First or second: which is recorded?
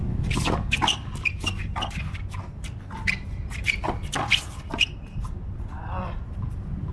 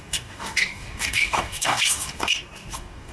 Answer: first